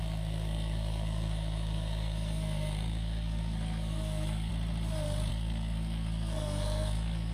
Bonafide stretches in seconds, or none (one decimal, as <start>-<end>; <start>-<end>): 4.5-5.3